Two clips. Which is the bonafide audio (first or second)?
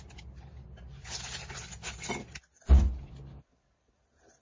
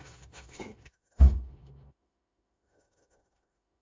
first